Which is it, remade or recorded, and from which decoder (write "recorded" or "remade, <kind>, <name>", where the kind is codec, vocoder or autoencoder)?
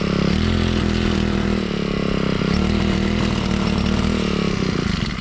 recorded